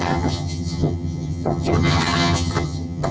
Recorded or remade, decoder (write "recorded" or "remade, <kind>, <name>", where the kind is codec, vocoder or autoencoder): remade, vocoder, HiFi-GAN